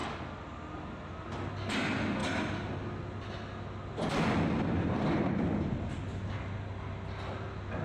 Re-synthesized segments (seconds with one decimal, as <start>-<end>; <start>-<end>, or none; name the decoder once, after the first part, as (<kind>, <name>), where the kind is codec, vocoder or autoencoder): none